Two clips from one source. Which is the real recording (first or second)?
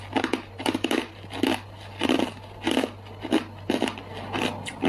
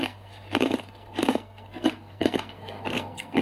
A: first